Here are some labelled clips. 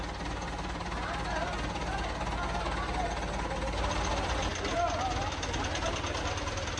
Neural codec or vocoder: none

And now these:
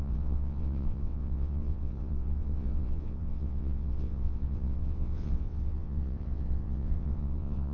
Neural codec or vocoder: vocoder, WaveNeXt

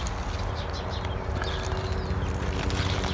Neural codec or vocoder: none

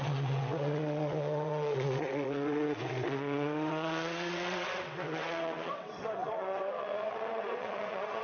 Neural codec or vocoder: vocoder, WaveNeXt